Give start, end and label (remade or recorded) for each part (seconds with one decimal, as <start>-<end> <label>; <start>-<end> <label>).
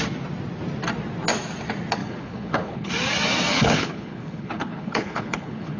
0.0-2.0 recorded; 2.0-2.9 remade; 2.9-3.5 recorded; 3.5-5.8 remade